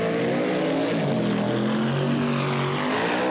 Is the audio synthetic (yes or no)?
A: no